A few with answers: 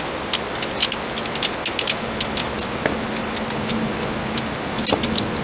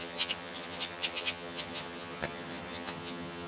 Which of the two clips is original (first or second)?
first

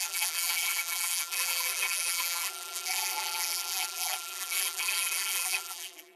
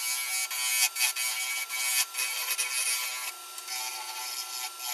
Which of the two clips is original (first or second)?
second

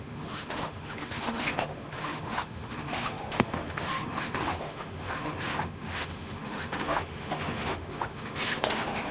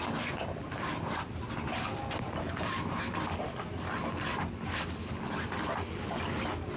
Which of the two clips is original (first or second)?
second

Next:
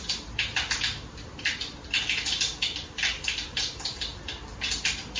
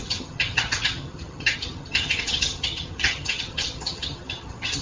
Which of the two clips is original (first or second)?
first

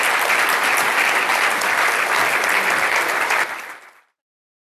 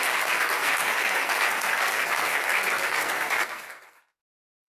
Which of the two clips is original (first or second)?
first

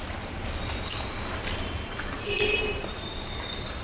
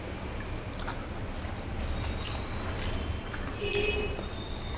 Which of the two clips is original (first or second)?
second